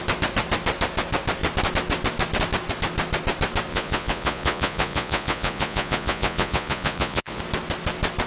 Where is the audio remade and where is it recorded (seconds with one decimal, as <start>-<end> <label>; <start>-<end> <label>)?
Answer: 0.0-3.7 recorded; 3.7-7.4 remade; 7.4-8.3 recorded